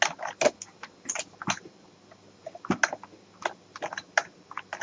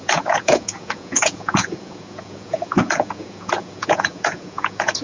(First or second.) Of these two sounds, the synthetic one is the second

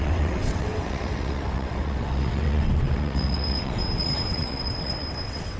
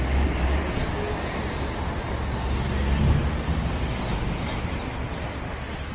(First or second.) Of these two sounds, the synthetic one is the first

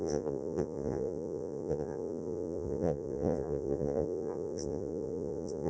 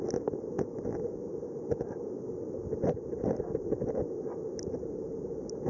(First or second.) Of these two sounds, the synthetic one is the first